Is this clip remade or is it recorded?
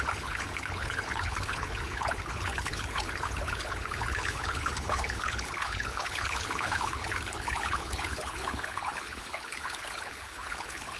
remade